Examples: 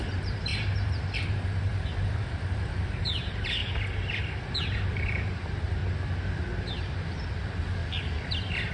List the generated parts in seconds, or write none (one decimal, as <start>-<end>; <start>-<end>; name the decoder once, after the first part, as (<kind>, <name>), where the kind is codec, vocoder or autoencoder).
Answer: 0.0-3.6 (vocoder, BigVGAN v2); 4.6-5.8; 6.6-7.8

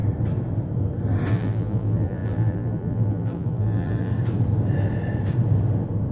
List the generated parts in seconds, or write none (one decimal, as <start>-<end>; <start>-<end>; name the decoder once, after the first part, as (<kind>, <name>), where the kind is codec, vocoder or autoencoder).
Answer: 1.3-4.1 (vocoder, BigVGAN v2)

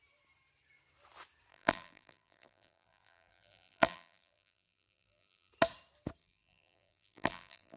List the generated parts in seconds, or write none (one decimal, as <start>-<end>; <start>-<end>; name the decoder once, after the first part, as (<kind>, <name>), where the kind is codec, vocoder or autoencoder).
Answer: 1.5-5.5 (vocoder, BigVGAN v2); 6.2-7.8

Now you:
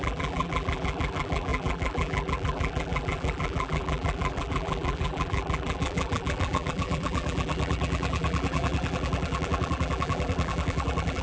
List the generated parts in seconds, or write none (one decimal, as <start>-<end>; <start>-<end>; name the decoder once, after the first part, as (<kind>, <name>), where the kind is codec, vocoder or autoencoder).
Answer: 0.0-11.2 (vocoder, BigVGAN v2)

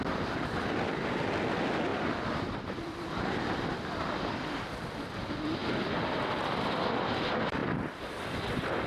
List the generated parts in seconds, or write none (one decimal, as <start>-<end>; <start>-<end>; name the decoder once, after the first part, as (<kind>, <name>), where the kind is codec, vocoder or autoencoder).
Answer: 1.9-3.1 (vocoder, BigVGAN v2); 5.6-6.2; 7.6-8.9

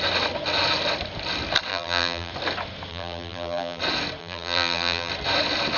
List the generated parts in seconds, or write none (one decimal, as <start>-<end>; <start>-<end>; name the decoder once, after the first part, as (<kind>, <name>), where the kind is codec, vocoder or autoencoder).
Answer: 1.7-2.3 (vocoder, BigVGAN v2); 2.9-3.8; 4.2-5.1